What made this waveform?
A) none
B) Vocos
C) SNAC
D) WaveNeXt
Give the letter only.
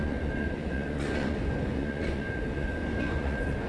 B